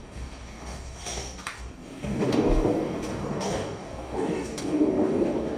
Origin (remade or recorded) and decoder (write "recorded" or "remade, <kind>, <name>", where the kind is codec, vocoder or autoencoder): remade, codec, DAC